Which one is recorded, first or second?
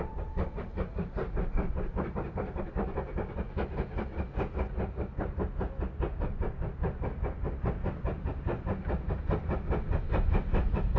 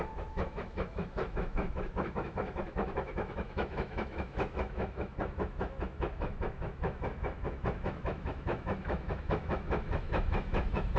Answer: first